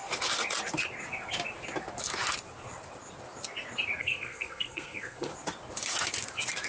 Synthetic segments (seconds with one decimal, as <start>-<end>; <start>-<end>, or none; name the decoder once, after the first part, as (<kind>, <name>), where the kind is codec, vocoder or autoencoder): 4.0-5.3 (codec, SNAC)